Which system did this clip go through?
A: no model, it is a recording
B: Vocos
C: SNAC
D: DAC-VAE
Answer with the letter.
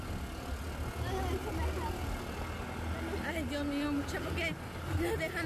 A